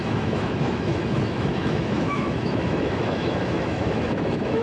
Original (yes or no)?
no